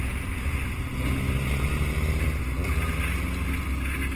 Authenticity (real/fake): real